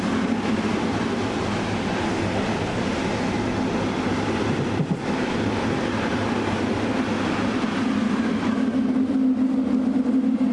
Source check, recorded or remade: recorded